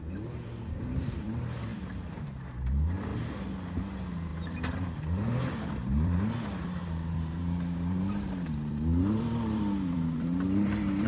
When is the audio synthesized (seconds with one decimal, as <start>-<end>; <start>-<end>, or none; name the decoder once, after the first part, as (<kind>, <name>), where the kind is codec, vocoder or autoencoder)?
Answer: 0.0-3.1 (vocoder, BigVGAN v2); 3.9-11.1